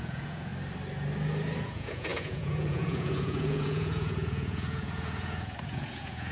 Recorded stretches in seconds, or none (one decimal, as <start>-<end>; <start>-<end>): 0.5-1.6